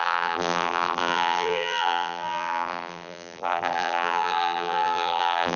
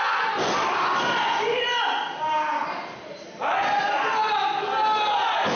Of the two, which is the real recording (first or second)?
second